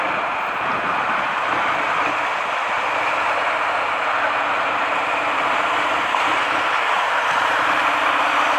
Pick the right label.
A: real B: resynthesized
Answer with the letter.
B